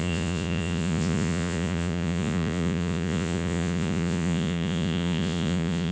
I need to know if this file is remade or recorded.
remade